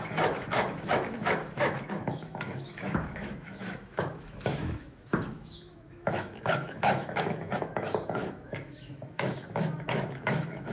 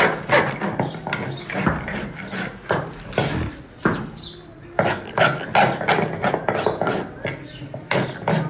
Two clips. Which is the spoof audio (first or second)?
first